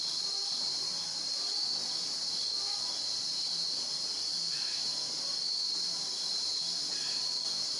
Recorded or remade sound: remade